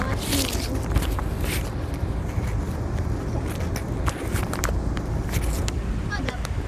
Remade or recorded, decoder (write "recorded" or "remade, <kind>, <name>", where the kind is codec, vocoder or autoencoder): recorded